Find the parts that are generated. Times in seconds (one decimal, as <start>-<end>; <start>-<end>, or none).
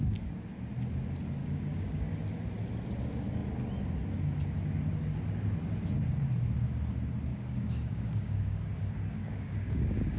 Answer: 1.4-2.1; 7.3-8.7; 9.2-10.2